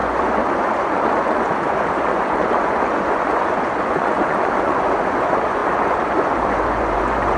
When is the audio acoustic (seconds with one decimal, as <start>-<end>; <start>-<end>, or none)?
none